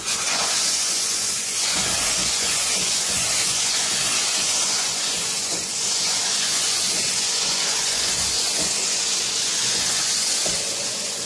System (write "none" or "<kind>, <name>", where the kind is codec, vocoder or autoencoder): vocoder, Vocos